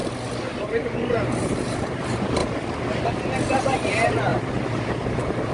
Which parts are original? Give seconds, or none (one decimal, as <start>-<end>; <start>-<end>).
0.0-1.1; 2.4-3.6